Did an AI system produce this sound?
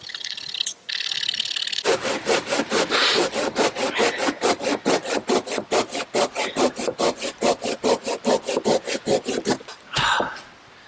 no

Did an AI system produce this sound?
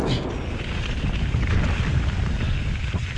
no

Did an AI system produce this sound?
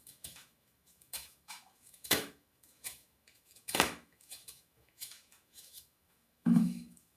yes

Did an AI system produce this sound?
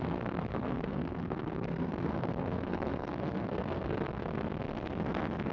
yes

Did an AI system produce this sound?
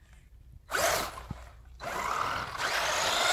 no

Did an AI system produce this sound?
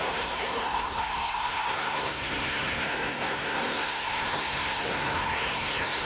yes